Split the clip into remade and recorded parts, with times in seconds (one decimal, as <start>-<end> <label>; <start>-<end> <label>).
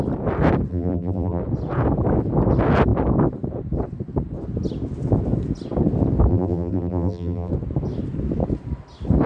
0.0-0.7 recorded; 0.7-1.4 remade; 1.4-6.3 recorded; 6.3-7.5 remade; 7.5-9.3 recorded